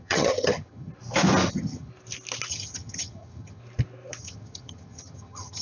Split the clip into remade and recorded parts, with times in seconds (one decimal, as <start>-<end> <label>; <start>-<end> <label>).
0.0-0.9 remade; 0.9-1.5 recorded; 1.5-1.9 remade; 1.9-2.5 recorded; 2.5-3.6 remade; 3.6-4.2 recorded; 4.2-5.6 remade